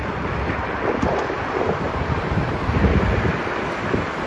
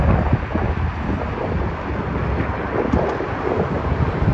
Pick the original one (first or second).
second